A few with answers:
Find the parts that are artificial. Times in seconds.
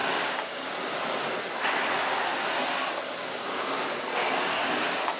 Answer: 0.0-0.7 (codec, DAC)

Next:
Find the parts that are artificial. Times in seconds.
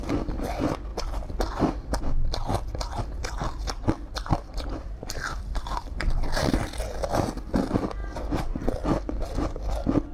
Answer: 3.2-6.5 (vocoder, BigVGAN v2); 8.0-8.7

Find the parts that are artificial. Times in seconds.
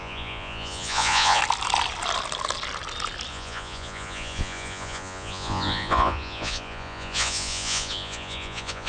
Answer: 0.0-1.4 (vocoder, Vocos); 3.3-8.9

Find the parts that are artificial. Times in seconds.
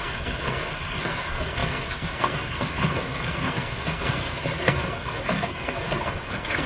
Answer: 0.0-6.7 (codec, SNAC)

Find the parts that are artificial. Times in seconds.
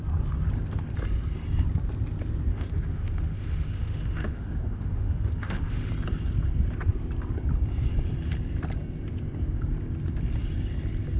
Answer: 2.5-5.9 (autoencoder, DAC-VAE)